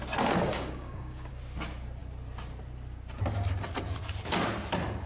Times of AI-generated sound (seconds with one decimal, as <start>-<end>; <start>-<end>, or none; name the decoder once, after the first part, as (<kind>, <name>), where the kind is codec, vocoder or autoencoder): 0.5-1.3 (codec, DAC)